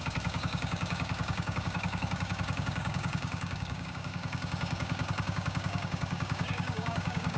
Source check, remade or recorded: remade